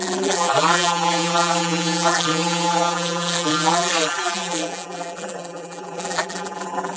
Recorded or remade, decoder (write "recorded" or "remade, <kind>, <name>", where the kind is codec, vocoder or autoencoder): remade, vocoder, BigVGAN v2